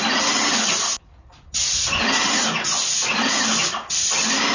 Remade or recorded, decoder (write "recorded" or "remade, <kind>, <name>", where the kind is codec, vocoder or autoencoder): recorded